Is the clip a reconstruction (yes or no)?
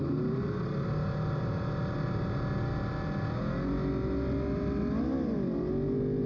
no